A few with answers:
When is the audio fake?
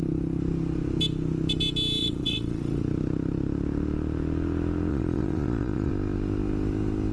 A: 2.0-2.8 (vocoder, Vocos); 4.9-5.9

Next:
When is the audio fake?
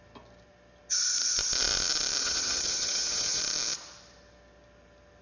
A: 2.2-3.4 (vocoder, HiFi-GAN)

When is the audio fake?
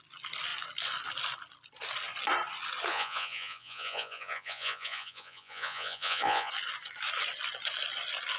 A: 2.9-6.5 (vocoder, Vocos)